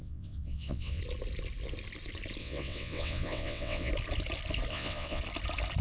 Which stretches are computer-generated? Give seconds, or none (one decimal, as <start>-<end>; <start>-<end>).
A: 0.0-1.0; 2.4-3.9; 4.7-5.2